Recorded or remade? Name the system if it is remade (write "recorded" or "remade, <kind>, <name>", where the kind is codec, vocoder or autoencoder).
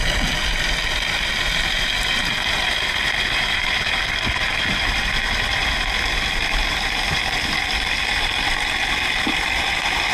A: recorded